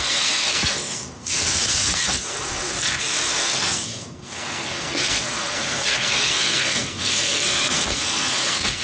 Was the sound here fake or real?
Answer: fake